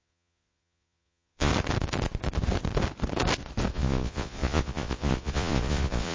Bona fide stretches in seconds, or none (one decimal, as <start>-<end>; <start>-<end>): 1.5-3.7